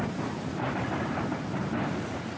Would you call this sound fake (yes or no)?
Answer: yes